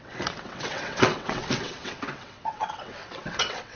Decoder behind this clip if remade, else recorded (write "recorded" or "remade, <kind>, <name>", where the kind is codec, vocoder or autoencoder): remade, vocoder, WaveNeXt